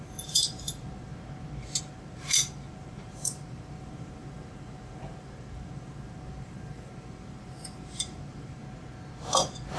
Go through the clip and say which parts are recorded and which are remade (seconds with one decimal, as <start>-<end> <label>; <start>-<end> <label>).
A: 0.0-1.1 remade; 1.1-1.8 recorded; 1.8-8.6 remade; 8.6-9.8 recorded